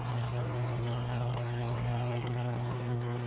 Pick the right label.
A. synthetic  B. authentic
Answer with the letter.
A